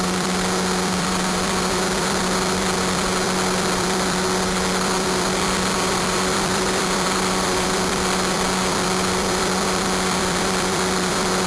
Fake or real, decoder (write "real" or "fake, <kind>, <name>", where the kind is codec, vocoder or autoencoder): fake, vocoder, BigVGAN v2